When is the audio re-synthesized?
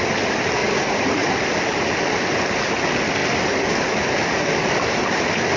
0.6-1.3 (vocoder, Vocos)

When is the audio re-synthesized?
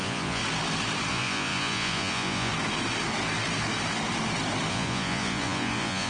0.0-0.4 (vocoder, Vocos); 1.1-2.5; 4.7-6.1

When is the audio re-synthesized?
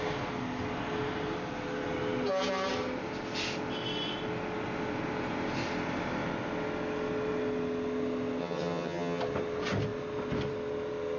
8.4-9.2 (vocoder, HiFi-GAN)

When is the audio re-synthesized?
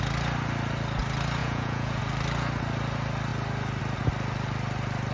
1.4-2.0 (vocoder, Vocos)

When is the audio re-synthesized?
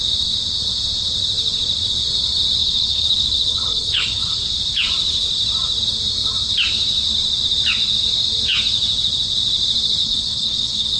2.6-4.3 (codec, HILCodec); 10.0-11.0